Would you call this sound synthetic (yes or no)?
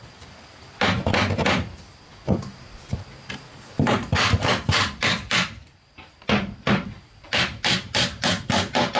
yes